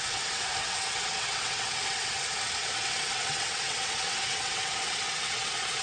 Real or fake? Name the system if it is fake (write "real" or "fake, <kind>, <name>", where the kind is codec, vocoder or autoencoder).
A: fake, vocoder, WaveNeXt